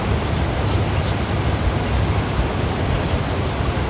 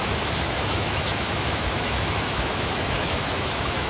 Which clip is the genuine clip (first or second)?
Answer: first